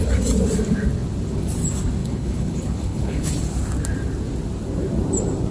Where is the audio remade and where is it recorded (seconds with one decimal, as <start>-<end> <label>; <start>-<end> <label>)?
0.0-2.0 recorded; 2.0-3.3 remade; 3.3-5.5 recorded